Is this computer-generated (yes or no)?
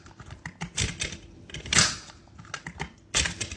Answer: no